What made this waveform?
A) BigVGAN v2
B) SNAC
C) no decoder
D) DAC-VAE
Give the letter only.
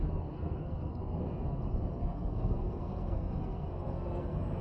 B